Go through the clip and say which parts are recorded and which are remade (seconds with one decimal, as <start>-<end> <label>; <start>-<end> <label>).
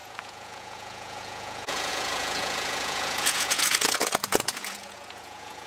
0.0-5.7 remade